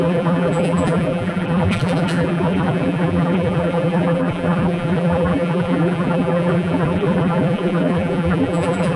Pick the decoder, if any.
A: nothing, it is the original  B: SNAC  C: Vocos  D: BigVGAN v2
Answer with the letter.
D